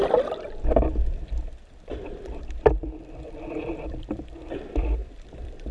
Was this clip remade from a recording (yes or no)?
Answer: yes